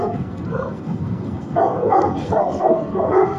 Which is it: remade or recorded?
remade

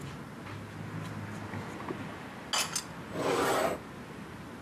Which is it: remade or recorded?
recorded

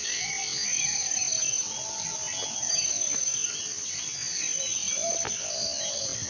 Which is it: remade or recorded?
recorded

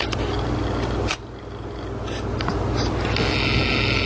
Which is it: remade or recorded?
recorded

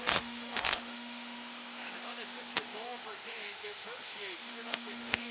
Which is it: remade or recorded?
remade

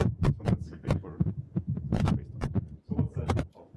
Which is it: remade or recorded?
remade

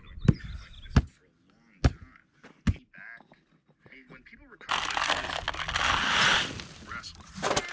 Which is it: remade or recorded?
recorded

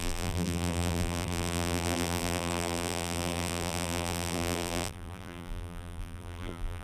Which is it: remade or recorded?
remade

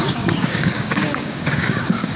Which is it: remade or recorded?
remade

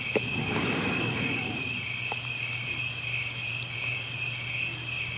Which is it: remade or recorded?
recorded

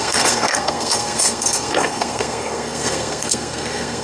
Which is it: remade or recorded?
remade